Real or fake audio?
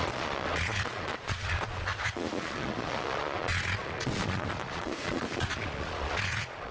fake